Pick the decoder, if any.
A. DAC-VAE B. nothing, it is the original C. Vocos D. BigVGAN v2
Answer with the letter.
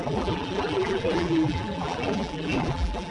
D